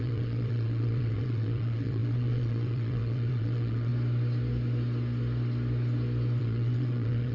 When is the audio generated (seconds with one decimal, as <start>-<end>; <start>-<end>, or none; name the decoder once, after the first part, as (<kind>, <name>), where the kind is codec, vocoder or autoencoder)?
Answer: 0.0-3.9 (vocoder, WaveNeXt); 6.4-7.3